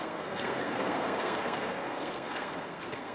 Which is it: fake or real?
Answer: fake